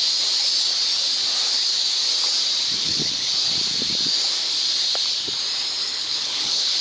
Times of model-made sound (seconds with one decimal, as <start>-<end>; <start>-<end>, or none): 2.8-3.3; 5.8-6.8